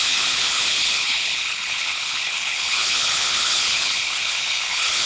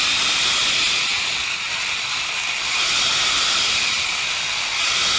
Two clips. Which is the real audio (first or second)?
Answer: second